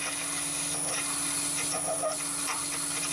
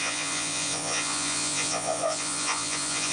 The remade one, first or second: second